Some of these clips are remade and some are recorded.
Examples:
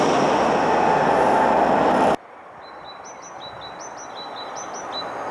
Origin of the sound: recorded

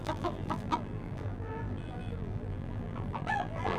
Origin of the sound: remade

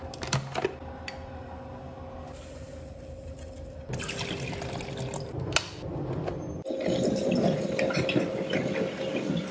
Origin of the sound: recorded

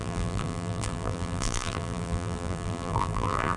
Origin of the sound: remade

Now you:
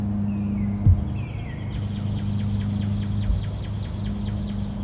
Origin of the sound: recorded